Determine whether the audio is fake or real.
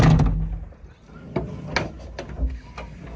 real